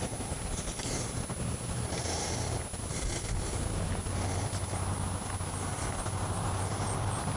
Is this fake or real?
real